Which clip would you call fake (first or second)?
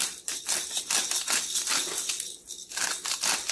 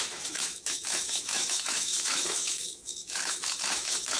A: second